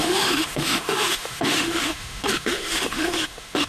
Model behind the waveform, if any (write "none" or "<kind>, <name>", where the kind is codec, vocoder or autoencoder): autoencoder, DAC-VAE